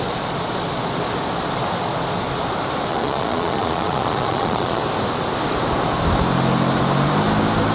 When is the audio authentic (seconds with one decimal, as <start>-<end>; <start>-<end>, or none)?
0.0-2.9; 4.8-7.7